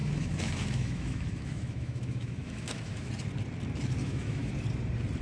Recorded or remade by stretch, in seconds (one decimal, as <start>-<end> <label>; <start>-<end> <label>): 0.0-3.1 remade; 3.1-4.0 recorded; 4.0-4.5 remade; 4.5-5.2 recorded